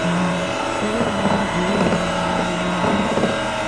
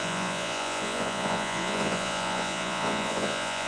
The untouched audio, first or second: first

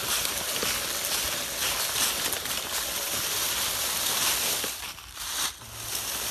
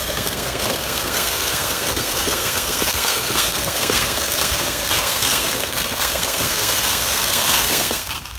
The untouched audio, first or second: first